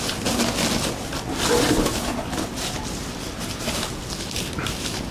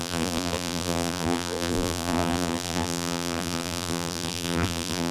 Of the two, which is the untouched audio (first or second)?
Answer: first